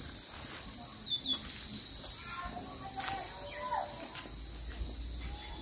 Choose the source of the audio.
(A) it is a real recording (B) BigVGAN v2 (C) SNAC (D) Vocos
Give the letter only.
A